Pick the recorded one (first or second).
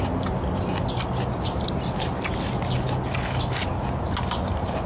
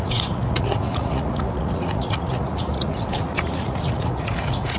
first